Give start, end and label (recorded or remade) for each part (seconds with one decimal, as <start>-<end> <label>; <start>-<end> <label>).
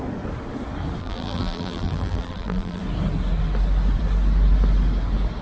0.0-1.0 recorded; 1.0-2.8 remade; 2.8-5.4 recorded